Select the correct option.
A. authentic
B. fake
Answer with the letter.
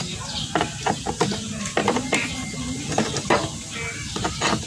A